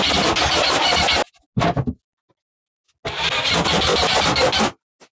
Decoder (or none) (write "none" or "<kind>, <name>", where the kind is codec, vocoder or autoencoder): none